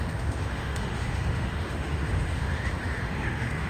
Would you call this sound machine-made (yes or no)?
yes